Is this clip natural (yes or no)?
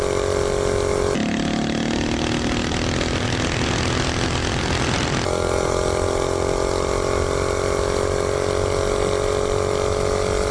yes